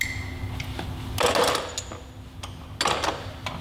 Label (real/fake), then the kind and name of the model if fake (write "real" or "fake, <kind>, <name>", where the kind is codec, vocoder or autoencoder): real